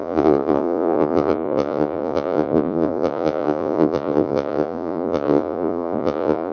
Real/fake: fake